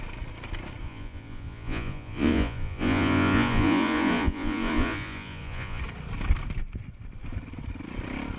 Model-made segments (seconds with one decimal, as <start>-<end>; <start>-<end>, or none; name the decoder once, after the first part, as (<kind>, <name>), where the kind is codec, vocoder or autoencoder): 0.8-5.8 (vocoder, Vocos)